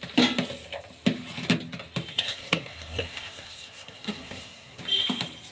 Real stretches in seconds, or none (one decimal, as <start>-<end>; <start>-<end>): 0.0-2.1; 4.8-5.5